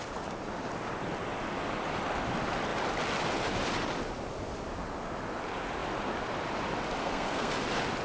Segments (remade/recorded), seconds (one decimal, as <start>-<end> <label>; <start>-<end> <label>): 0.0-7.0 recorded; 7.0-7.5 remade; 7.5-8.0 recorded